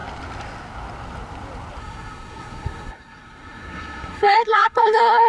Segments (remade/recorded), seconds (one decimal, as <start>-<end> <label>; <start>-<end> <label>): 0.0-1.8 recorded; 1.8-5.3 remade